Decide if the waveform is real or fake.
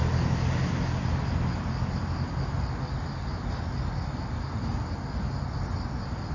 real